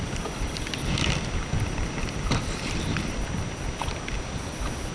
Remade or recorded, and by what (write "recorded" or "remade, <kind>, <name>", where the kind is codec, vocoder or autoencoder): recorded